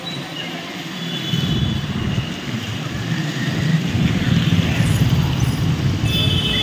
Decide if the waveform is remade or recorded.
recorded